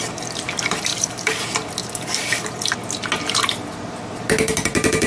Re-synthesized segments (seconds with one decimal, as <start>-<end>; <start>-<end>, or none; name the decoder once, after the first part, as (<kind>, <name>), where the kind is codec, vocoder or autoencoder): 0.9-1.4 (codec, DAC); 1.8-2.5